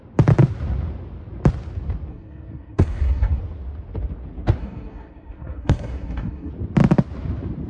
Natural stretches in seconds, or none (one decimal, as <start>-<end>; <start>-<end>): 0.0-2.1; 3.4-4.6; 6.5-7.7